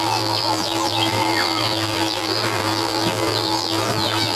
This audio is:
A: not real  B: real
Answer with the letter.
A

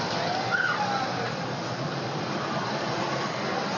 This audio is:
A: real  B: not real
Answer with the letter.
B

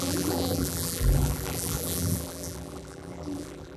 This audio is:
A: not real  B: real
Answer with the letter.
A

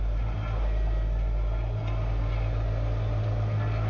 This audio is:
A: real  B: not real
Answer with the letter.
A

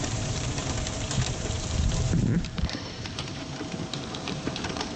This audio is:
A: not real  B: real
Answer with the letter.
A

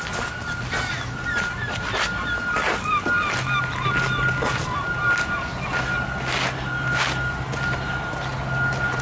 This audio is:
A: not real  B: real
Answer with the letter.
B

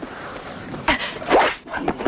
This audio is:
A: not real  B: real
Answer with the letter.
A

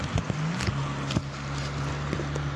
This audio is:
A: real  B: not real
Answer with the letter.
A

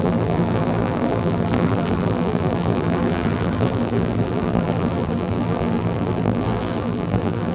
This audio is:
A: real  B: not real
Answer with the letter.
B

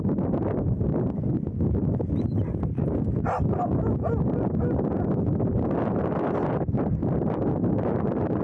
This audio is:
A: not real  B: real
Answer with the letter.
B